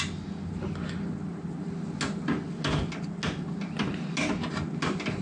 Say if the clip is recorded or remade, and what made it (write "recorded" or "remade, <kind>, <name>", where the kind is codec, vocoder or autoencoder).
recorded